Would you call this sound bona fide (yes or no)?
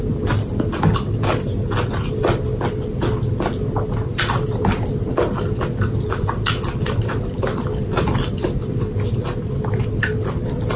yes